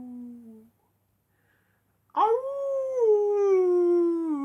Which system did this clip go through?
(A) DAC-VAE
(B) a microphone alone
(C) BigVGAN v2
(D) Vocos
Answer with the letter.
B